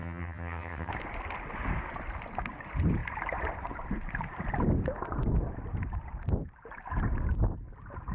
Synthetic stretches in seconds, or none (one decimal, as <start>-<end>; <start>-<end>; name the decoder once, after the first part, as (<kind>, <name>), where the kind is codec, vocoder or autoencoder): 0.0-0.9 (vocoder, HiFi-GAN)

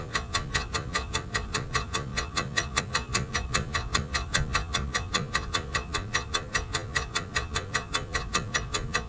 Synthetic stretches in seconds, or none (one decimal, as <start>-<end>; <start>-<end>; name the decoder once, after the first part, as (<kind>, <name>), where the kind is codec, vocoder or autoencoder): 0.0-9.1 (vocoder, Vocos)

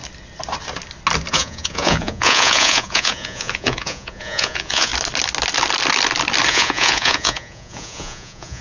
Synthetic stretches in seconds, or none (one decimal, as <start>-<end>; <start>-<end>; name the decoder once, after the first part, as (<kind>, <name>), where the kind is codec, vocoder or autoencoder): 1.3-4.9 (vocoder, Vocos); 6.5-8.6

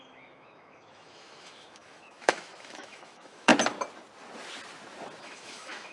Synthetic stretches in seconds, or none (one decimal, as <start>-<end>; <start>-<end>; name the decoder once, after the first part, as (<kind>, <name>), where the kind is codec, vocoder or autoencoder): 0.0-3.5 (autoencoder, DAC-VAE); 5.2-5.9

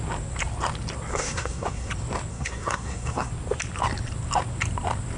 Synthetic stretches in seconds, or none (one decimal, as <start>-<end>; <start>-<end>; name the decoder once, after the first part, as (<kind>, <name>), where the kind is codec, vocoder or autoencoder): 1.1-1.9 (codec, SNAC); 2.3-3.3